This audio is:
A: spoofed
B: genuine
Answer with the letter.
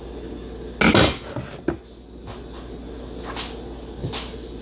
B